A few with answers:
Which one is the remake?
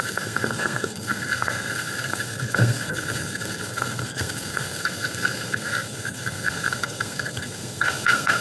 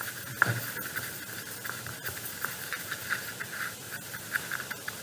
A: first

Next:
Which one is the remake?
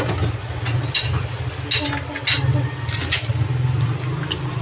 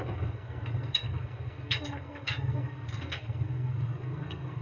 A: second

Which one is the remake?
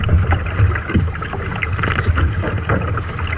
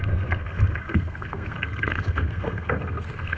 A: second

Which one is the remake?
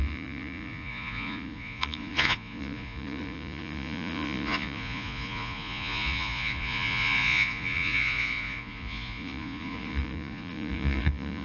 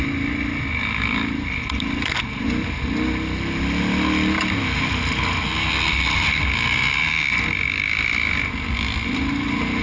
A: first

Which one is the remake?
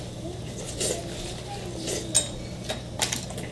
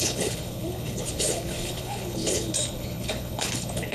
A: second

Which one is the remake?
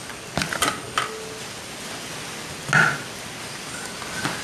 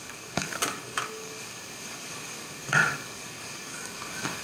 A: second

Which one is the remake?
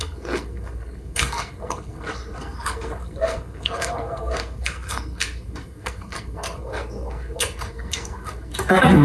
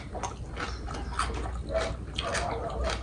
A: first